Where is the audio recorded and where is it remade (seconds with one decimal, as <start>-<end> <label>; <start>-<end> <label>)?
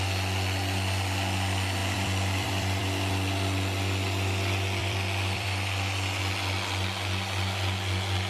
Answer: 0.0-1.8 recorded; 1.8-3.1 remade; 3.1-4.8 recorded; 4.8-6.2 remade; 6.2-8.3 recorded